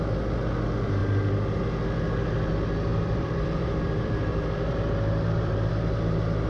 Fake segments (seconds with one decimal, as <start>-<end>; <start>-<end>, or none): 2.9-5.7